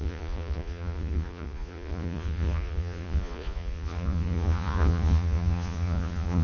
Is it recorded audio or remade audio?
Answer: remade